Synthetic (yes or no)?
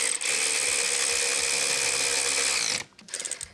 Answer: no